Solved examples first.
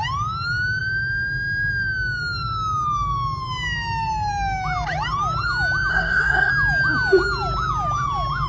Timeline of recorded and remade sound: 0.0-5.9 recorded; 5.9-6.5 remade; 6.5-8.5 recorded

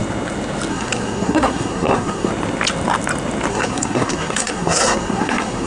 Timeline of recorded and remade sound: 0.0-0.7 recorded; 0.7-2.3 remade; 2.3-3.5 recorded; 3.5-5.7 remade

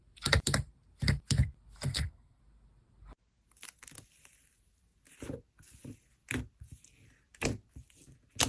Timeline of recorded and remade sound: 0.0-1.9 recorded; 1.9-2.4 remade; 2.4-8.5 recorded

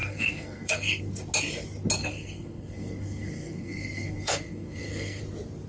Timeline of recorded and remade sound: 0.0-1.0 remade; 1.0-2.0 recorded; 2.0-5.2 remade; 5.2-5.7 recorded

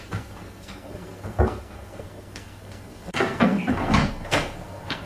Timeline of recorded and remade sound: 0.0-5.0 remade

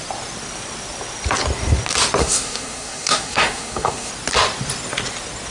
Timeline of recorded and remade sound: 0.0-2.2 recorded; 2.2-4.1 remade; 4.1-5.5 recorded